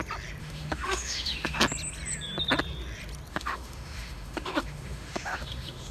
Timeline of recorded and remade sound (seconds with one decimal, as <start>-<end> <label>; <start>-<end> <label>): 0.0-0.4 recorded; 0.4-1.6 remade; 1.6-3.3 recorded; 3.3-5.9 remade

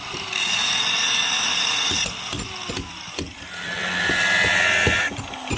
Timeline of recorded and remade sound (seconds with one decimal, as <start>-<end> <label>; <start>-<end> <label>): 0.0-1.0 recorded; 1.0-1.9 remade; 1.9-5.6 recorded

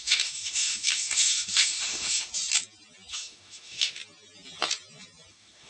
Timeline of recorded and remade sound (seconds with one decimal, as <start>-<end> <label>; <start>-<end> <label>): 0.0-2.3 remade; 2.3-3.1 recorded; 3.1-4.0 remade; 4.0-5.3 recorded; 5.3-5.7 remade

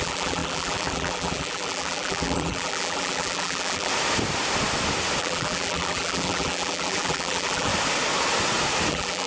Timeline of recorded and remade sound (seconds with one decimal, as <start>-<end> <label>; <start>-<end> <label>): 0.0-3.9 remade; 3.9-5.2 recorded; 5.2-7.7 remade; 7.7-8.9 recorded; 8.9-9.3 remade

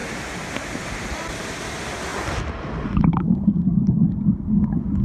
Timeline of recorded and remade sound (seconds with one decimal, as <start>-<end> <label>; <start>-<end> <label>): 0.0-0.9 remade; 0.9-5.0 recorded

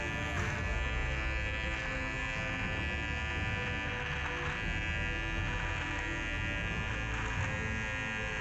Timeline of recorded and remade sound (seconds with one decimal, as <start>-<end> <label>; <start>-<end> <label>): 0.0-8.4 recorded

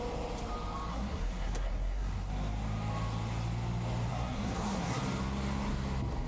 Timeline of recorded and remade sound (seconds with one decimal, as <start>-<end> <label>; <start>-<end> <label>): 0.0-0.9 recorded; 0.9-2.3 remade; 2.3-4.1 recorded; 4.1-5.0 remade; 5.0-6.3 recorded